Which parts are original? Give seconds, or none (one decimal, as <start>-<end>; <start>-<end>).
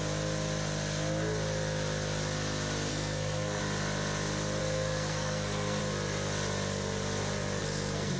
0.0-2.9; 3.6-4.6; 5.8-7.6